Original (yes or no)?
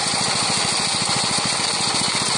yes